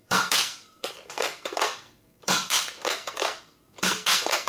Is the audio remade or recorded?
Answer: remade